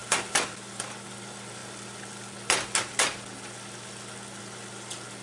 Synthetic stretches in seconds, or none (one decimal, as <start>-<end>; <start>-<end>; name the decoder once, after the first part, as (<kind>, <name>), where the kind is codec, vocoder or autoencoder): none

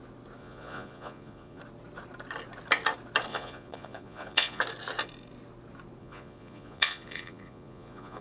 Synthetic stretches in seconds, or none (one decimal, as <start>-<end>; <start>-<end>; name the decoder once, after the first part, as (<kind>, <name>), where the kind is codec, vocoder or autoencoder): 0.4-1.6 (vocoder, Vocos); 3.3-4.6; 6.0-8.2

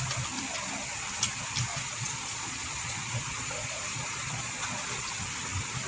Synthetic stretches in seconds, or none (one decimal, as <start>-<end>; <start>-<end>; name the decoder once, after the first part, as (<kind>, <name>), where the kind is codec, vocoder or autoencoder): 1.7-5.2 (vocoder, Vocos)

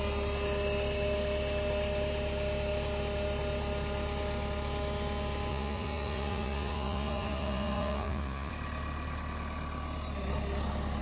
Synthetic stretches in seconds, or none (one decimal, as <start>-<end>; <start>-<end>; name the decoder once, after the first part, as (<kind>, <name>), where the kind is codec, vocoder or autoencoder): 5.5-8.5 (vocoder, Vocos)

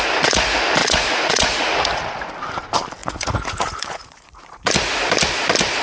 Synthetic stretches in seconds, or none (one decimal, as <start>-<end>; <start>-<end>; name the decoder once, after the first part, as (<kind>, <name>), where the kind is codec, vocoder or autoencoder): 0.8-2.3 (vocoder, Vocos); 3.0-4.7

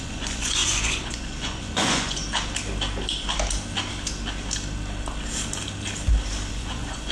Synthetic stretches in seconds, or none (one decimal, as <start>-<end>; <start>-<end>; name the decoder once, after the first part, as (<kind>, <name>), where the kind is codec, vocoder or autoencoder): 0.0-2.2 (vocoder, Vocos); 6.5-7.1

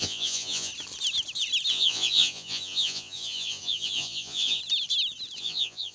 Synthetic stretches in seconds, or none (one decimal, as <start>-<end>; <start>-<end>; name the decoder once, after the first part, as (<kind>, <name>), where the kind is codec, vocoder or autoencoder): 0.0-0.7 (vocoder, Vocos); 1.7-4.6; 5.4-5.9

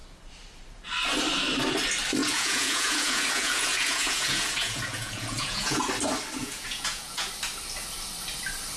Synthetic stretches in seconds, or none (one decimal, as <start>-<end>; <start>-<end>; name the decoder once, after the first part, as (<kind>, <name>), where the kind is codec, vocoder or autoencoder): 2.2-5.9 (vocoder, Vocos); 6.4-7.3